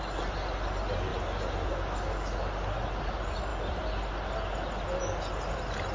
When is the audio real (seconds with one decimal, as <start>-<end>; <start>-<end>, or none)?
0.0-5.9